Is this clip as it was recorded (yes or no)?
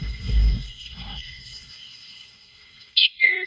no